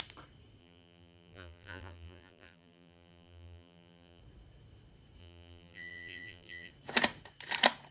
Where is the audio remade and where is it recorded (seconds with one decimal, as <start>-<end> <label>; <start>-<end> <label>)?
0.0-0.6 recorded; 0.6-4.2 remade; 4.2-5.2 recorded; 5.2-6.7 remade; 6.7-7.9 recorded